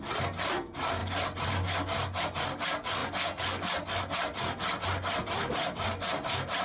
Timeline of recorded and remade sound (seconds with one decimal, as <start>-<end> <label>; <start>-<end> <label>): 0.0-6.6 recorded